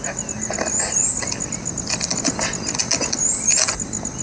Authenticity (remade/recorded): recorded